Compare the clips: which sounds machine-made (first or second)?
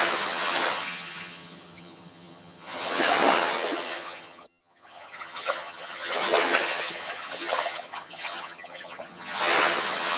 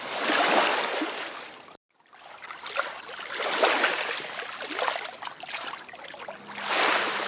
first